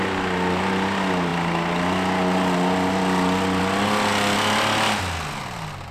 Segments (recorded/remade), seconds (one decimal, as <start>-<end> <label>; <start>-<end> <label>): 0.0-5.9 recorded